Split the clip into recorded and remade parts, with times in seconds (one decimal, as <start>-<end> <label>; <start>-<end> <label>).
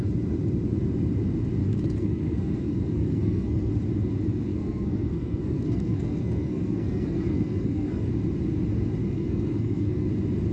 0.0-1.6 recorded; 1.6-3.7 remade; 3.7-4.5 recorded; 4.5-8.1 remade; 8.1-9.0 recorded; 9.0-10.1 remade; 10.1-10.5 recorded